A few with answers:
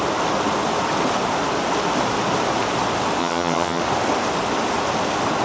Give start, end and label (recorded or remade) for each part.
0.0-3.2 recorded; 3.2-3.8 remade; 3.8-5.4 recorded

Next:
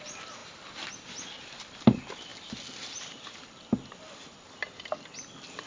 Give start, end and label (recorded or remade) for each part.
0.0-5.7 recorded

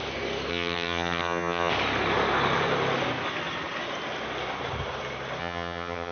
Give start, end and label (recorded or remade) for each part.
0.0-0.5 recorded; 0.5-1.7 remade; 1.7-5.4 recorded; 5.4-6.1 remade

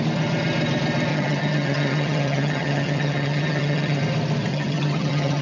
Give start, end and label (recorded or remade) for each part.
0.0-1.1 recorded; 1.1-4.0 remade; 4.0-4.5 recorded; 4.5-5.4 remade

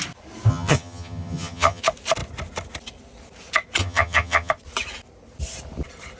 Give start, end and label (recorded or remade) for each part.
0.0-0.5 recorded; 0.5-1.8 remade; 1.8-3.8 recorded; 3.8-4.5 remade; 4.5-6.2 recorded

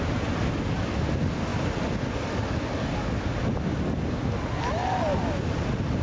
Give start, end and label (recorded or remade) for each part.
0.0-6.0 recorded

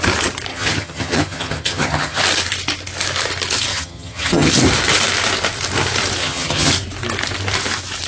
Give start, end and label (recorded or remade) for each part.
0.0-0.5 recorded; 0.5-2.2 remade; 2.2-3.7 recorded; 3.7-4.5 remade; 4.5-6.2 recorded; 6.2-6.7 remade; 6.7-8.1 recorded